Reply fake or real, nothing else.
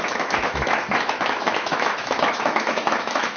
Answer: fake